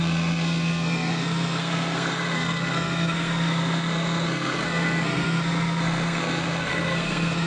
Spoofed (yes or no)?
yes